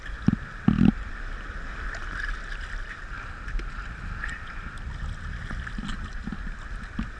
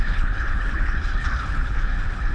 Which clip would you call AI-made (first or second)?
second